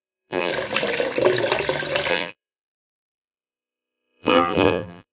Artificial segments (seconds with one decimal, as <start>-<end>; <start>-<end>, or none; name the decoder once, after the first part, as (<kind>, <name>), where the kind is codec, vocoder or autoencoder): 0.0-0.5 (vocoder, BigVGAN v2); 2.1-5.1